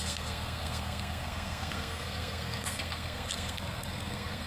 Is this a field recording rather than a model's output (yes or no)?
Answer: no